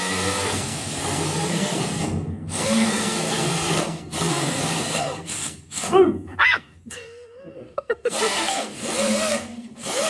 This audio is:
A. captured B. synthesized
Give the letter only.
B